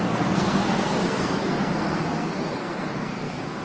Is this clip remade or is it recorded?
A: remade